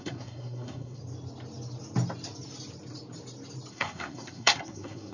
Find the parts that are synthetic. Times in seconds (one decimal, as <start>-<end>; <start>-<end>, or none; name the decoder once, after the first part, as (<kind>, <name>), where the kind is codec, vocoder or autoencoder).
0.0-1.0 (codec, SNAC); 3.7-5.1